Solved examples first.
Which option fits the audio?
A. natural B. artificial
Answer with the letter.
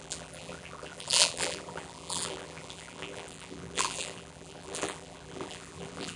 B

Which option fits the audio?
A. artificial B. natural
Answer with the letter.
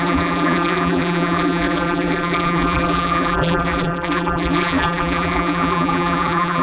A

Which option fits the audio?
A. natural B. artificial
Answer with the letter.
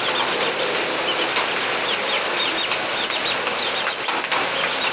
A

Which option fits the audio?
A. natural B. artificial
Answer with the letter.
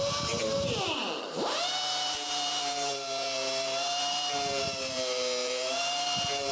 B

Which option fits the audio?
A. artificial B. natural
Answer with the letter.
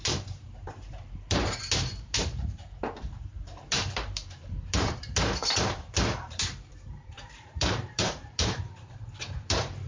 A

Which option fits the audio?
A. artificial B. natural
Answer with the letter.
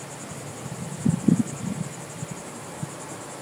B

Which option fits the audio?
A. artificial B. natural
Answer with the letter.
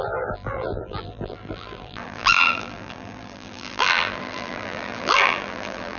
A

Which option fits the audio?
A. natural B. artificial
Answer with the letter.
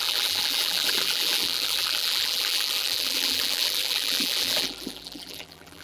B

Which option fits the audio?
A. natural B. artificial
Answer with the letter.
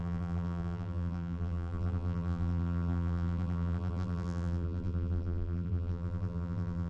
B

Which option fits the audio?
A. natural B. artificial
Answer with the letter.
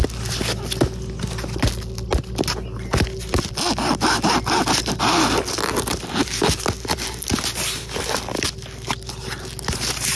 A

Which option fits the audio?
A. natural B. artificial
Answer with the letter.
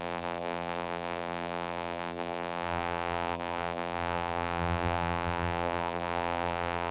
B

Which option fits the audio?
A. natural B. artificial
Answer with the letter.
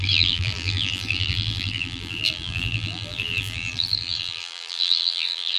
B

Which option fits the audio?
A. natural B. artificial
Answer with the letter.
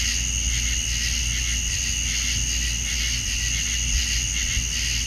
A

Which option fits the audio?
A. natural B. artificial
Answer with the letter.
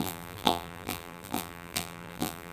B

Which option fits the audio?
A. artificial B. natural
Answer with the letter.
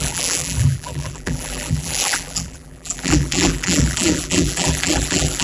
A